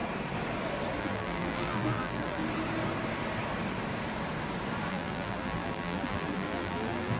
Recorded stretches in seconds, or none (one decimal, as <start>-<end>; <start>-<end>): 0.0-1.0; 2.4-4.9